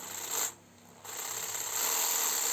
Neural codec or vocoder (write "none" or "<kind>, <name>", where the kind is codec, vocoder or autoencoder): none